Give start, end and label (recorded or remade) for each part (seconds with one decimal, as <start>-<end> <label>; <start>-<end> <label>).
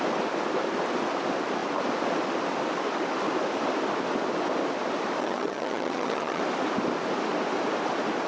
0.0-5.2 recorded; 5.2-6.4 remade; 6.4-8.3 recorded